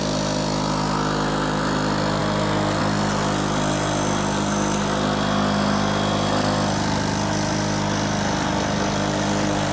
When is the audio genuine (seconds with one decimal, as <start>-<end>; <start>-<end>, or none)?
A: 0.0-9.7